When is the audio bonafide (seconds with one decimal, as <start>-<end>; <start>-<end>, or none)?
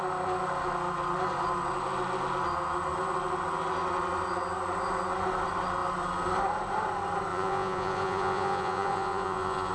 0.0-7.3